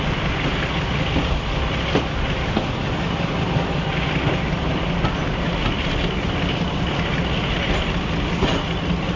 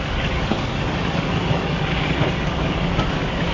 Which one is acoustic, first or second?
first